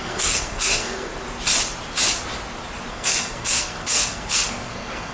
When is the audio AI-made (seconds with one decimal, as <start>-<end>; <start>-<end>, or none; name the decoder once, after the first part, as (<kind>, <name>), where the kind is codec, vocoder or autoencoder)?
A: 0.0-1.1 (codec, SNAC); 2.9-5.1